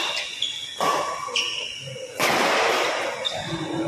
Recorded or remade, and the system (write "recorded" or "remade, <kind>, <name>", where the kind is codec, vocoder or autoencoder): recorded